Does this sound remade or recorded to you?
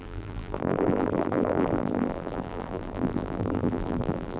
remade